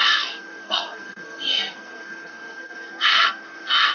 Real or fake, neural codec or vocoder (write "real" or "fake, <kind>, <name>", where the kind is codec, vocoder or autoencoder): fake, codec, SNAC